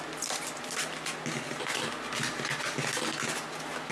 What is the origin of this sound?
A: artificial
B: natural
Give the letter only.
B